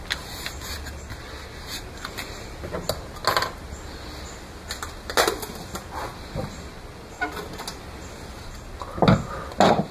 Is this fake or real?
real